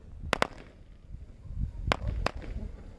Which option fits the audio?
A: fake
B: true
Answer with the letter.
B